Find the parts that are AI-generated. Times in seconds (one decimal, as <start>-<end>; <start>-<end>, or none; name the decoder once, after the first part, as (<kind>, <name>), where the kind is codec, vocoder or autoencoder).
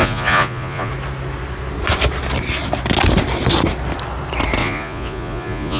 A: 0.0-0.9 (vocoder, Vocos); 4.6-5.8